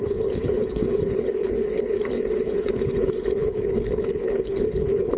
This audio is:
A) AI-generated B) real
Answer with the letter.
A